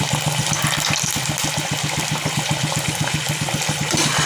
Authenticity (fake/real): real